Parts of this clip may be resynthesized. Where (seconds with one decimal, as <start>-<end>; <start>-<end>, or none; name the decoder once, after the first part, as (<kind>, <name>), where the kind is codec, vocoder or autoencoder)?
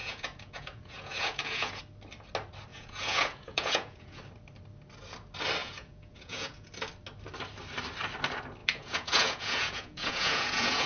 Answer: 0.0-1.8 (vocoder, Vocos); 2.7-4.2; 5.6-6.7; 8.6-10.9